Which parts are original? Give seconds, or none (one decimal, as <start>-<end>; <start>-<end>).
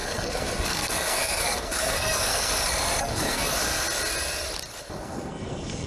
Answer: 2.5-3.0; 3.5-4.8